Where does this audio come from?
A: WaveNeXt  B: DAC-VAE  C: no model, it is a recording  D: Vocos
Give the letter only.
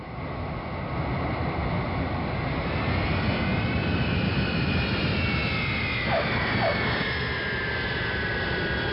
C